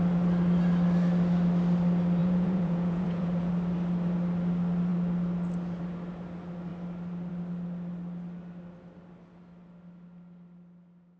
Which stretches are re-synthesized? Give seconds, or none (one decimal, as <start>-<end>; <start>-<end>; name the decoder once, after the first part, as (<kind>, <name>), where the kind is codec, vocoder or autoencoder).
2.2-3.5 (vocoder, Vocos)